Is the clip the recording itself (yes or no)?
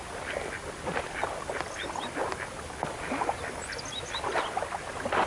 yes